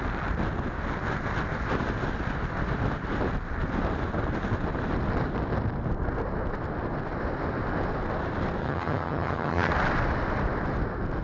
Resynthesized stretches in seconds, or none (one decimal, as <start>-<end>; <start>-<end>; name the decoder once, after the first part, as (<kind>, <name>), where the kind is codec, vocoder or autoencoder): 8.6-9.7 (vocoder, HiFi-GAN)